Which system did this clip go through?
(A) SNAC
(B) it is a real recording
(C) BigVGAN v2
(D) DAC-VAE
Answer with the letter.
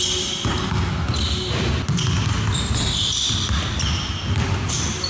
B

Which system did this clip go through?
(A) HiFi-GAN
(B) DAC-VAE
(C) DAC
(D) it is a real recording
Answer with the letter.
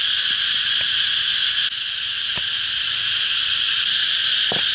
D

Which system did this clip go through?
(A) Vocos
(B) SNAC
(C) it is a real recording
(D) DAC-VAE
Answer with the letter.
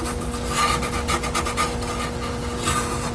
C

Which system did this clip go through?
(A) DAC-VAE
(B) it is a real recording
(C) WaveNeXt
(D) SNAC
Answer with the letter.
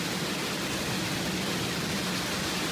B